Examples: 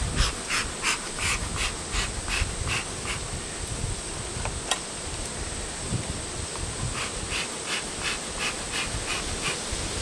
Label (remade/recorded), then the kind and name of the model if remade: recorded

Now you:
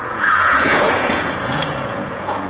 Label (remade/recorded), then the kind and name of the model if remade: remade, vocoder, Vocos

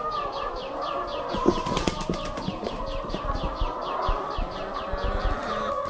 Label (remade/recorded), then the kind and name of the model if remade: recorded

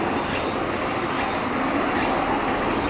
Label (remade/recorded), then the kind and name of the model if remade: recorded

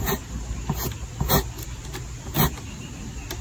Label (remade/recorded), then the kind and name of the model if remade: recorded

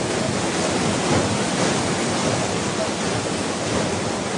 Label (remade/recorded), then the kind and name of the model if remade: recorded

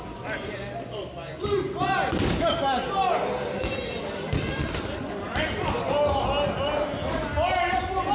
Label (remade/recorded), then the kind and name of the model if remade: recorded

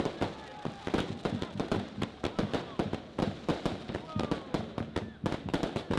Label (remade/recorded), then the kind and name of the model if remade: recorded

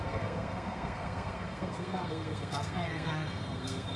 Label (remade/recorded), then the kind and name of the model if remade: remade, codec, SNAC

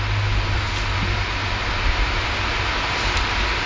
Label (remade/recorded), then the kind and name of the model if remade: recorded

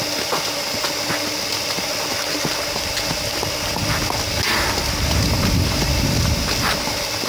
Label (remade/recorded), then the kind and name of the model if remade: recorded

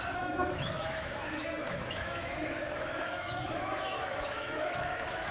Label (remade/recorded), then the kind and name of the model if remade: remade, autoencoder, DAC-VAE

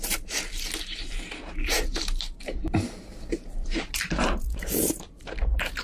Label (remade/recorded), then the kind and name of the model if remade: remade, vocoder, BigVGAN v2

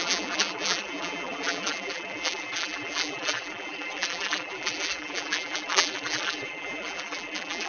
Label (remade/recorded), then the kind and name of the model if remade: remade, vocoder, BigVGAN v2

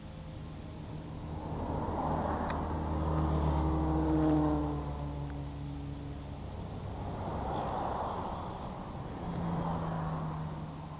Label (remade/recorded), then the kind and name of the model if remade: recorded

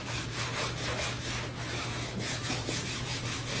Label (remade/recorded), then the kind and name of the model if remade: remade, autoencoder, DAC-VAE